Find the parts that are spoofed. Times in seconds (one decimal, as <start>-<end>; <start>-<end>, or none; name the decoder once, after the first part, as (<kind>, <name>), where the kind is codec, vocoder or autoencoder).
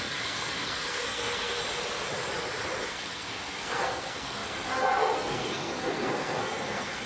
0.0-1.6 (codec, SNAC); 2.9-7.1